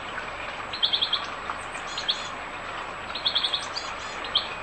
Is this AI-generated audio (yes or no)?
no